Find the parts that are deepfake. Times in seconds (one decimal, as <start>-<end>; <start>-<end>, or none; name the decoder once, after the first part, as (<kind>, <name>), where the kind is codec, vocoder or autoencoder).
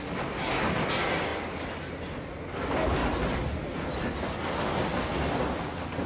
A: none